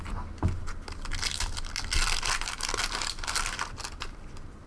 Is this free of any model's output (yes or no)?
yes